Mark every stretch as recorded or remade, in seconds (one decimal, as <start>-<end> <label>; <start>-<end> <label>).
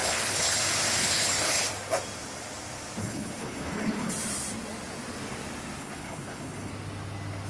0.0-0.6 remade; 0.6-1.0 recorded; 1.0-1.7 remade; 1.7-3.0 recorded; 3.0-4.1 remade; 4.1-5.8 recorded; 5.8-6.7 remade; 6.7-7.5 recorded